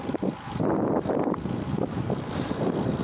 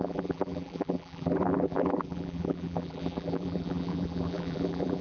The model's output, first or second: second